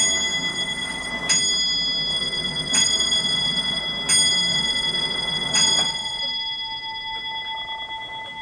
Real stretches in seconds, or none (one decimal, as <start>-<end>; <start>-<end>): 0.0-0.5; 1.1-2.1; 3.8-4.5; 6.2-8.4